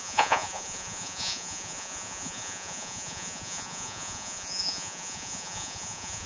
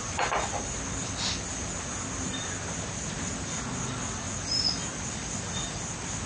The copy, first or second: first